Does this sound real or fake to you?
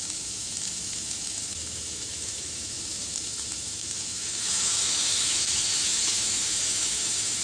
fake